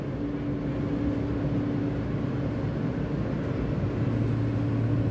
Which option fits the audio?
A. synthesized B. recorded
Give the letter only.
B